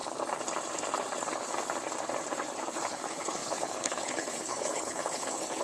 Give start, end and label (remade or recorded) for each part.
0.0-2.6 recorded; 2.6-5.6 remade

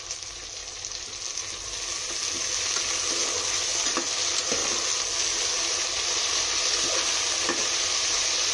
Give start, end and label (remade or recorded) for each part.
0.0-8.5 recorded

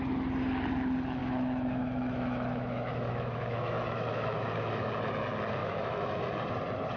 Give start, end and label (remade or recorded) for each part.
0.0-1.2 recorded; 1.2-4.9 remade; 4.9-5.6 recorded; 5.6-6.4 remade; 6.4-7.0 recorded

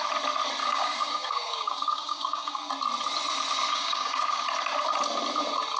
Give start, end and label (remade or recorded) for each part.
0.0-0.6 recorded; 0.6-2.7 remade; 2.7-3.7 recorded; 3.7-4.4 remade; 4.4-5.8 recorded

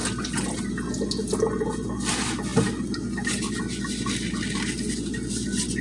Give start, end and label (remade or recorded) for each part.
0.0-5.8 recorded

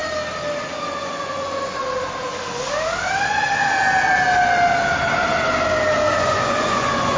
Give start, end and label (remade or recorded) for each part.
0.0-1.0 recorded; 1.0-1.8 remade; 1.8-6.1 recorded; 6.1-7.2 remade